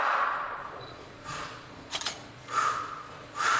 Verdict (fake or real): fake